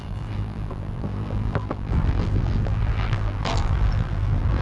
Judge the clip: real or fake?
fake